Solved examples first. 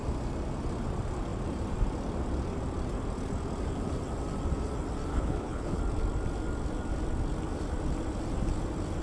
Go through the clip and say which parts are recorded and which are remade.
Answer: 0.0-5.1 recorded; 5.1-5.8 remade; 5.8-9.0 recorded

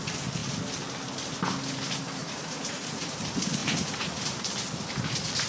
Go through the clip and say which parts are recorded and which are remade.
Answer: 0.0-2.2 recorded; 2.2-3.2 remade; 3.2-3.6 recorded; 3.6-4.2 remade; 4.2-5.5 recorded

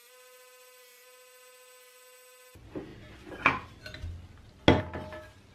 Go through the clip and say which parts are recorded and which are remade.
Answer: 0.0-5.5 recorded